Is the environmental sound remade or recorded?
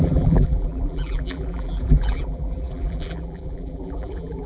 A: remade